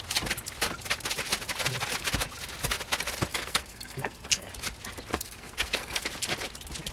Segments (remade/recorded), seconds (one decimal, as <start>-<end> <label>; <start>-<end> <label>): 0.0-3.3 recorded; 3.3-4.5 remade; 4.5-5.1 recorded; 5.1-6.1 remade; 6.1-6.9 recorded